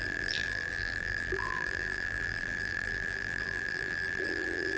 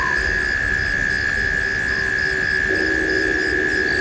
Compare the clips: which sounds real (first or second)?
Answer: second